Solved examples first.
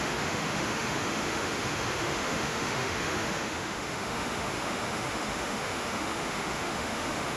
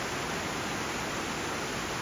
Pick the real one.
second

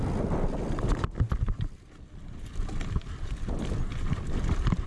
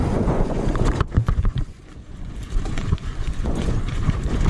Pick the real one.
first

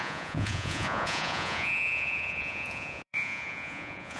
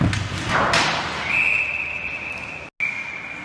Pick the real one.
second